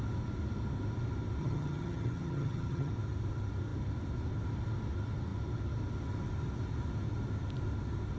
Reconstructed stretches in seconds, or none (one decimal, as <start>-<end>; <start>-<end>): 1.4-2.9